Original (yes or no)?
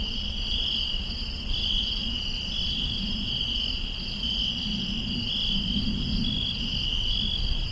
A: yes